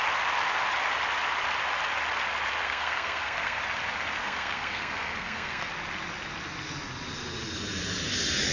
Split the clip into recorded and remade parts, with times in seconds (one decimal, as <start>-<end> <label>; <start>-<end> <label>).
0.0-2.6 recorded; 2.6-3.6 remade; 3.6-4.2 recorded; 4.2-5.7 remade; 5.7-8.5 recorded